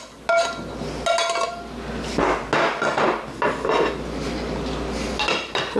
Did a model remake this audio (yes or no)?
no